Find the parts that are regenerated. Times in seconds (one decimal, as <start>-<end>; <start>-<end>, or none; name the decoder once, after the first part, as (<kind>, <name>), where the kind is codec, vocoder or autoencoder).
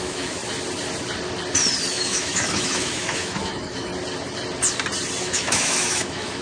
0.0-0.4 (autoencoder, DAC-VAE); 1.9-3.9; 5.2-6.4